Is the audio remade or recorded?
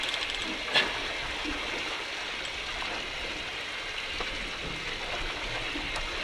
recorded